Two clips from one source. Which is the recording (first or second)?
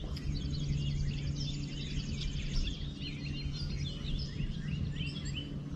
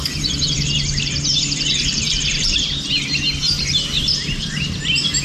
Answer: first